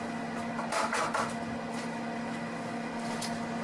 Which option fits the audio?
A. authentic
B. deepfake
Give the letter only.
A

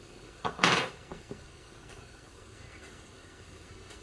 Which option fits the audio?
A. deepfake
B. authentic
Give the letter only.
A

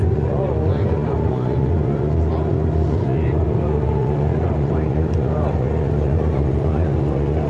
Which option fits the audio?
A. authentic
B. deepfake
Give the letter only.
B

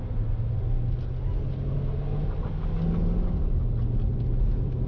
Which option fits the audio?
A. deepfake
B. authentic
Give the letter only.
B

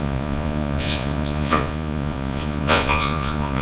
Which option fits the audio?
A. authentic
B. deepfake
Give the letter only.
B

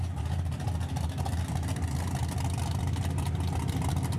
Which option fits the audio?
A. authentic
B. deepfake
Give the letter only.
A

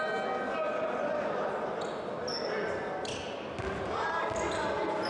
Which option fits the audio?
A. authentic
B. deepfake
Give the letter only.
A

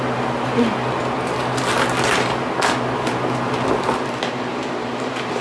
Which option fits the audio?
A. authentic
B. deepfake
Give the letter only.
A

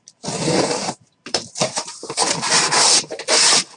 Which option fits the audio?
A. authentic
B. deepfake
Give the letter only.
B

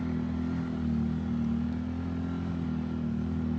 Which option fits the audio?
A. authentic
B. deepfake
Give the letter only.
A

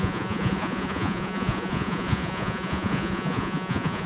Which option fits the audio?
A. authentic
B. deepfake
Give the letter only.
B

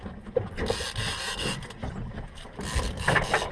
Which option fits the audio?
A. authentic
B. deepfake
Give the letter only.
A